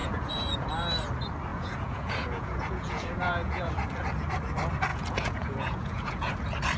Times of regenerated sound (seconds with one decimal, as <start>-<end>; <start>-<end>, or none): 0.0-0.7; 1.5-3.7; 4.9-6.3